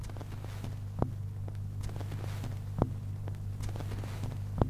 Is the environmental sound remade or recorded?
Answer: recorded